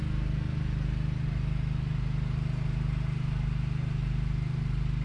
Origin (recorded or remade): recorded